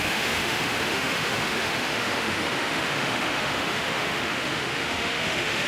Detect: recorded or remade remade